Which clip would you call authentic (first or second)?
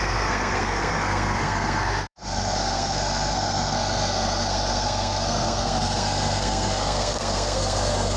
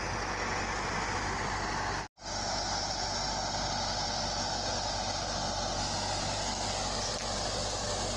second